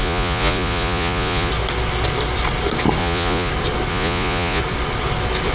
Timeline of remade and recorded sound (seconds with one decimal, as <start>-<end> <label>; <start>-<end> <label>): 0.0-1.5 remade; 1.5-3.0 recorded; 3.0-3.5 remade; 3.5-3.9 recorded; 3.9-4.6 remade; 4.6-5.5 recorded